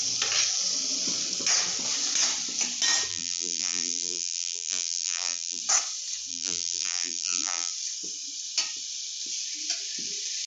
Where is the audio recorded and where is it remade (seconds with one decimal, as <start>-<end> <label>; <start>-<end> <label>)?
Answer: 0.0-3.1 recorded; 3.1-5.6 remade; 5.6-6.3 recorded; 6.3-7.7 remade; 7.7-10.5 recorded